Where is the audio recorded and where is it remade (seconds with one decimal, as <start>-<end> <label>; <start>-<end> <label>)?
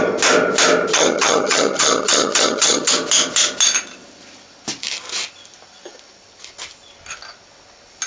0.0-0.9 recorded; 0.9-2.9 remade; 2.9-8.1 recorded